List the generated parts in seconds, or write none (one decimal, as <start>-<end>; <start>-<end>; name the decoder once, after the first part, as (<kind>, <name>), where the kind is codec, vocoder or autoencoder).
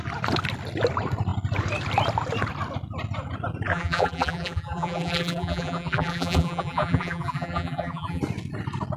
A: 3.7-8.2 (vocoder, BigVGAN v2)